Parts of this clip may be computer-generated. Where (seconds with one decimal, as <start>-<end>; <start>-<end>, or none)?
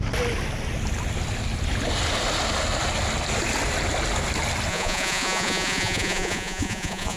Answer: 4.7-7.2